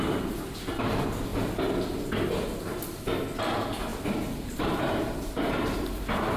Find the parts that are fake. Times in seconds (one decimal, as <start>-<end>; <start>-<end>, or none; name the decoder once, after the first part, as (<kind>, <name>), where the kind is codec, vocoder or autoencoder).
3.9-5.7 (vocoder, BigVGAN v2)